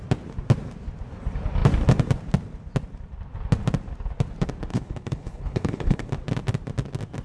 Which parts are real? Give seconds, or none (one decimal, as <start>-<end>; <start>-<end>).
0.0-4.7; 6.1-7.2